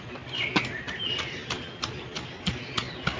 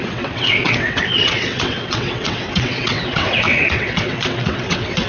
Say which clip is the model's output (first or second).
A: second